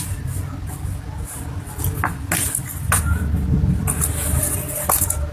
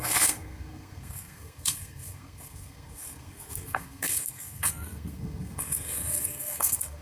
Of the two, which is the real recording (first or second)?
first